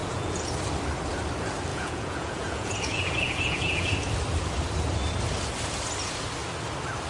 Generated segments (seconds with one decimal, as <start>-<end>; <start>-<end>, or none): 0.0-0.5; 1.7-3.9